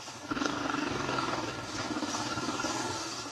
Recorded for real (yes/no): no